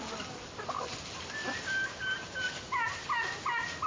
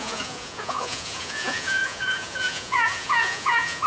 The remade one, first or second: second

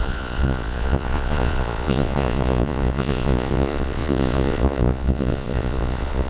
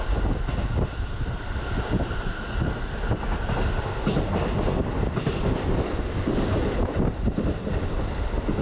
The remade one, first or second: first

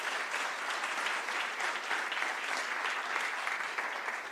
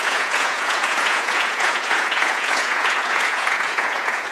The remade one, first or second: second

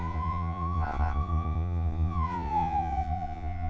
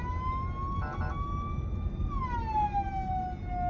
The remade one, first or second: first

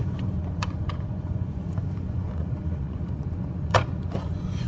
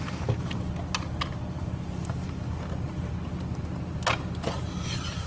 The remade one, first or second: first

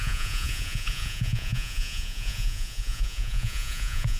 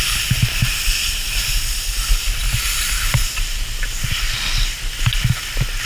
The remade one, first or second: first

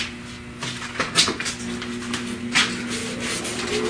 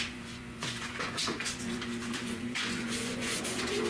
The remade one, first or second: second